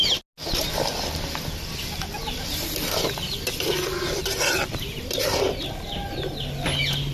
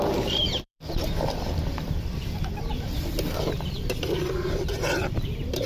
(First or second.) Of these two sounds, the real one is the first